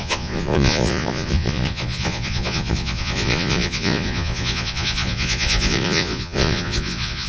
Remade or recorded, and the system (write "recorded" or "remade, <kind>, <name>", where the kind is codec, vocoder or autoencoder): remade, vocoder, Vocos